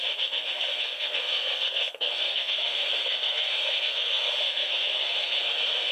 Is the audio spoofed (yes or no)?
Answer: yes